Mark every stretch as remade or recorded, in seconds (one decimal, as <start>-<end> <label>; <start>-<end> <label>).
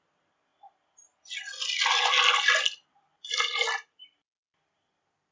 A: 0.0-5.3 recorded